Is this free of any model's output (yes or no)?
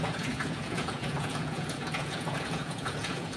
no